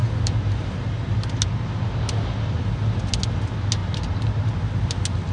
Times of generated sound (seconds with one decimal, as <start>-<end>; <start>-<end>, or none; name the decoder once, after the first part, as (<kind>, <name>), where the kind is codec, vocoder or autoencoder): 3.8-4.5 (vocoder, BigVGAN v2)